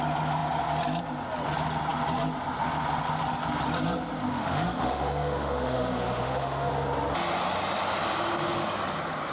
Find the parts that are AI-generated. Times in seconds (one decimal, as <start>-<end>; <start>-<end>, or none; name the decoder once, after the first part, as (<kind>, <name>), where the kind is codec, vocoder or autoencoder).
4.3-6.7 (autoencoder, DAC-VAE)